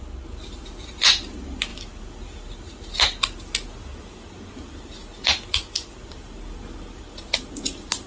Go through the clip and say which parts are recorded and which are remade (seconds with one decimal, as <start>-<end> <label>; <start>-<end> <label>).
0.0-8.1 recorded